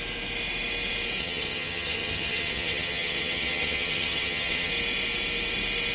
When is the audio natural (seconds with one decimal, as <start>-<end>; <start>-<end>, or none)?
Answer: 0.0-1.2; 4.7-5.9